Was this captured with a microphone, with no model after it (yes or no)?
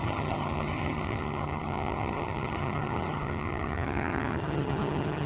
no